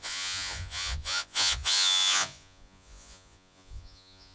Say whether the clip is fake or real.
fake